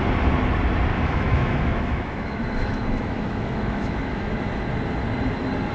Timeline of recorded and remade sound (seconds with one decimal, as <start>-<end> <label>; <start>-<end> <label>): 0.0-0.9 recorded; 0.9-4.3 remade; 4.3-5.7 recorded